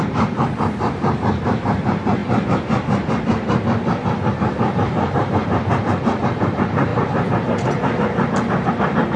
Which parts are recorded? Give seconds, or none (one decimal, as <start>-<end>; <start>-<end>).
2.2-4.3; 6.9-8.7